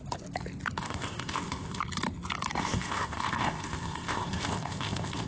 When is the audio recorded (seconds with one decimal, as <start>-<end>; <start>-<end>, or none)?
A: 0.0-0.8; 1.8-2.6